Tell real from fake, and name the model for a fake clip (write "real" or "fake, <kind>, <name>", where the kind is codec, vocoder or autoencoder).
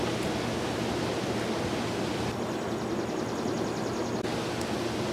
real